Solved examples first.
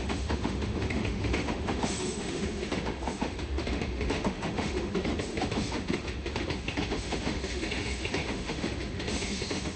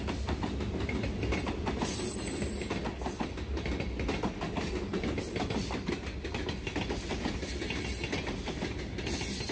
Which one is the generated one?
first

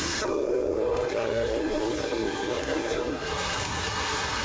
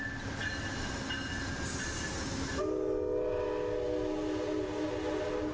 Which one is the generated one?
first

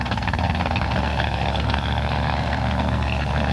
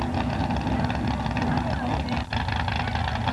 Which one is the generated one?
first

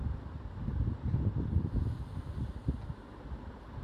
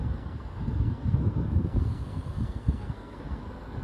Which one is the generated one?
second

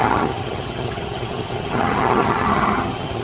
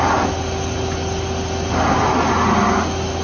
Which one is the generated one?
first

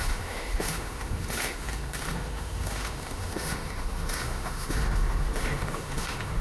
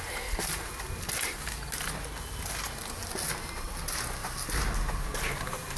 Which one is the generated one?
first